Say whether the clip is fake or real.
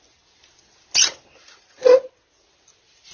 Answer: real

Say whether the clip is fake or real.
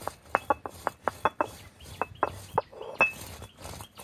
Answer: real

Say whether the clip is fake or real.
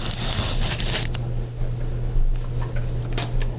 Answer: real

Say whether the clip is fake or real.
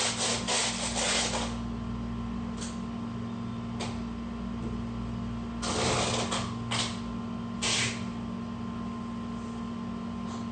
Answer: real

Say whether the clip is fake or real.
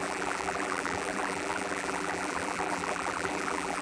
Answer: fake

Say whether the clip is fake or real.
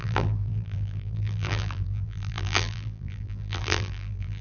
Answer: fake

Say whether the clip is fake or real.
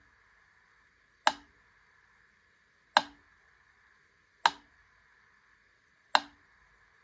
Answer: real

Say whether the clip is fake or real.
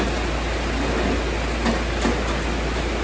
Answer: real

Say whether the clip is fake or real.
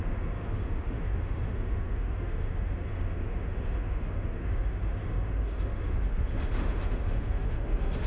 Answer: fake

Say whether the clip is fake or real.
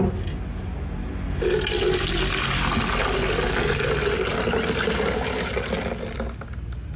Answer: real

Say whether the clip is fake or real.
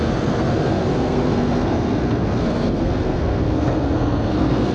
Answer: fake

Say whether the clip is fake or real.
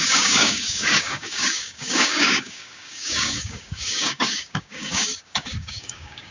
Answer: fake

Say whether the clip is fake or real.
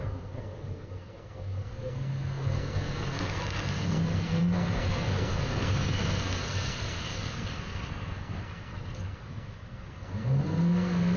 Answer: fake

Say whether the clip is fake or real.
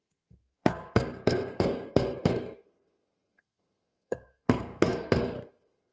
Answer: fake